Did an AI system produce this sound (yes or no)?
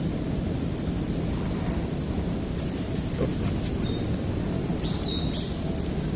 no